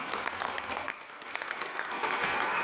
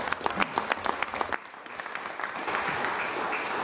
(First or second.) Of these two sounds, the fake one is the first